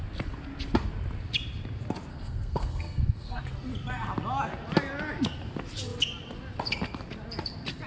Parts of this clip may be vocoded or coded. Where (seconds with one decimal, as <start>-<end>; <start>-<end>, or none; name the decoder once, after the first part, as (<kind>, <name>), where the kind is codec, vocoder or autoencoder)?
2.1-3.4 (codec, SNAC)